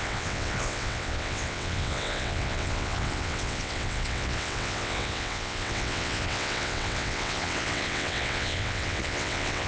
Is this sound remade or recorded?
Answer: remade